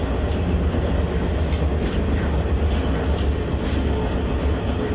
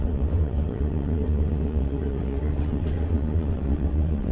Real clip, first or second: first